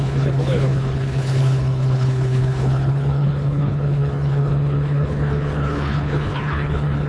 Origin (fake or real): fake